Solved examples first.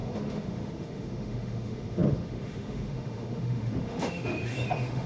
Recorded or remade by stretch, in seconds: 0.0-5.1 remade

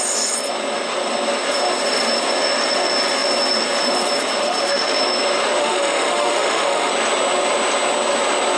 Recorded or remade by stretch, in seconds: 0.0-4.4 recorded; 4.4-5.0 remade; 5.0-5.6 recorded; 5.6-6.9 remade; 6.9-8.6 recorded

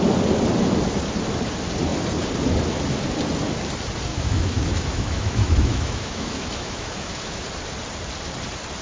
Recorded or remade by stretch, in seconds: 0.0-4.1 recorded; 4.1-7.4 remade; 7.4-8.8 recorded

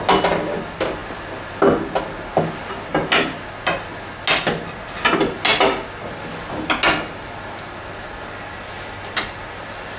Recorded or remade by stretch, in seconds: 0.0-10.0 recorded

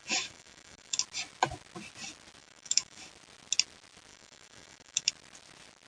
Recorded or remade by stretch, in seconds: 0.0-1.0 remade; 1.0-2.4 recorded; 2.4-3.1 remade; 3.1-4.1 recorded; 4.1-5.1 remade; 5.1-5.9 recorded

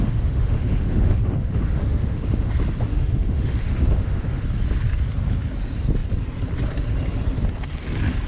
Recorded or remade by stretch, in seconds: 0.0-2.5 remade; 2.5-2.9 recorded; 2.9-4.4 remade; 4.4-8.3 recorded

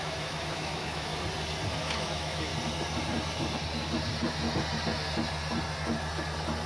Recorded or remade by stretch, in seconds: 0.0-1.1 remade; 1.1-1.8 recorded; 1.8-2.5 remade; 2.5-6.7 recorded

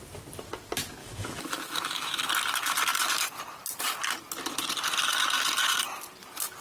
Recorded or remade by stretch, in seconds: 0.0-1.0 recorded; 1.0-2.3 remade; 2.3-6.6 recorded